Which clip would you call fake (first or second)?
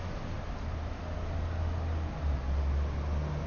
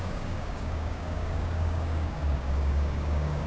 second